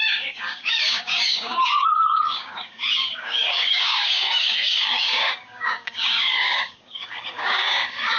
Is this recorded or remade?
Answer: remade